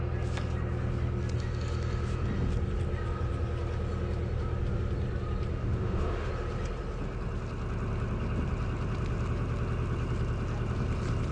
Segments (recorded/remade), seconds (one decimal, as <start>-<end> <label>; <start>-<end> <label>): 0.0-5.5 recorded; 5.5-6.3 remade; 6.3-11.3 recorded